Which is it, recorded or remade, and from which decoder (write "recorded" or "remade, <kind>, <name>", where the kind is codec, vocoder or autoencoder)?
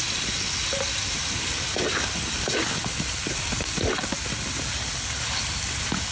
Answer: recorded